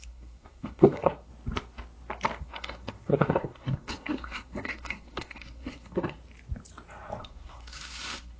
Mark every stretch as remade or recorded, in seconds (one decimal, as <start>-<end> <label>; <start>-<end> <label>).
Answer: 0.0-1.3 remade; 1.3-2.4 recorded; 2.4-6.2 remade; 6.2-7.2 recorded; 7.2-8.4 remade